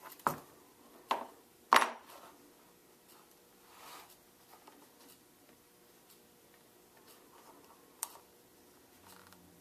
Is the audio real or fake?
real